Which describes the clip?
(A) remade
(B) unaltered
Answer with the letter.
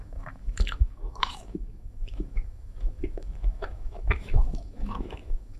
A